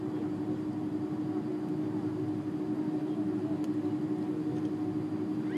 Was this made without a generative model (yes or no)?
yes